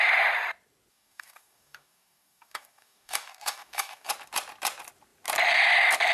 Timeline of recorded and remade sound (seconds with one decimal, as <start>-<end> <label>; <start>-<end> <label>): 0.0-0.9 recorded; 0.9-4.1 remade; 4.1-6.1 recorded